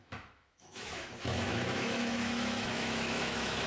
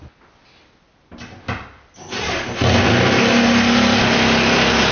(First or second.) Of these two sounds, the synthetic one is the first